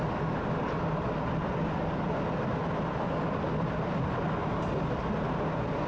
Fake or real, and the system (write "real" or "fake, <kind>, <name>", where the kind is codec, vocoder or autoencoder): real